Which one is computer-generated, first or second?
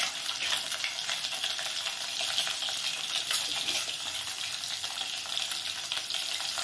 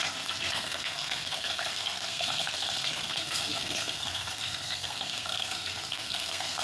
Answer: second